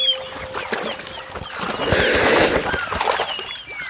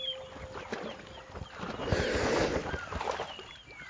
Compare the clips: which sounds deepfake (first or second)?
second